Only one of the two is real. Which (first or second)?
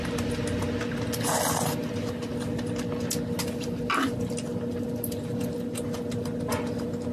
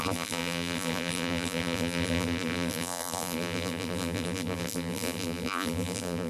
first